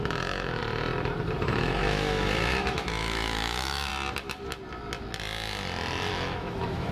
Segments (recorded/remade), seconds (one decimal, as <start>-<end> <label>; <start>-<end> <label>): 0.0-0.6 remade; 0.6-1.5 recorded; 1.5-3.9 remade; 3.9-6.1 recorded; 6.1-6.9 remade